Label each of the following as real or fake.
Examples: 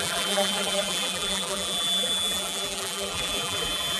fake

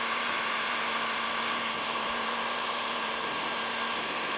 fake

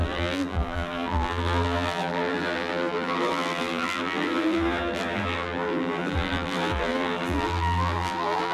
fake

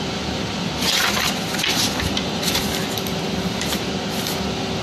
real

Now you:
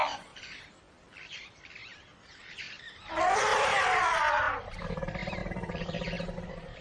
fake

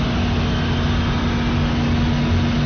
real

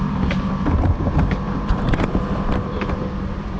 fake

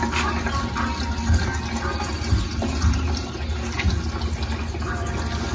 real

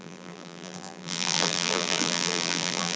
fake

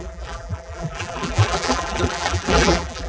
fake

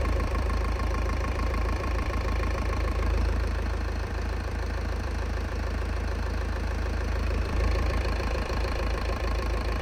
fake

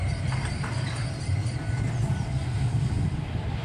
fake